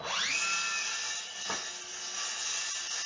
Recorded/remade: recorded